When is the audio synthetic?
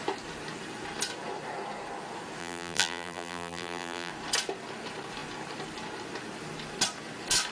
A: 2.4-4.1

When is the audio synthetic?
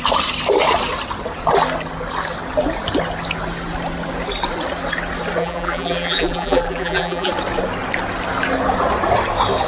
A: 5.4-7.3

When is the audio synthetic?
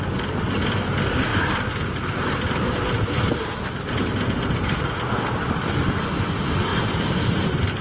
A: 1.3-4.1; 6.7-7.8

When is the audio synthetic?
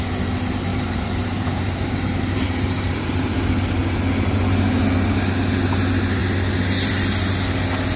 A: 0.7-3.1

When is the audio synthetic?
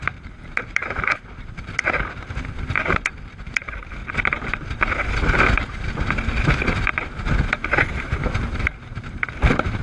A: 0.0-4.0; 7.5-9.8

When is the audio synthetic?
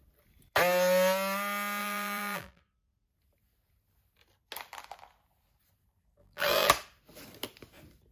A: 1.8-2.6; 6.2-6.7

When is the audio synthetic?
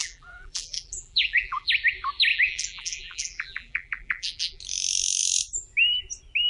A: 0.0-1.7; 2.3-4.6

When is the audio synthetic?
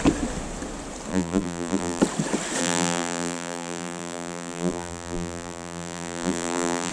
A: 1.1-2.0; 2.6-6.9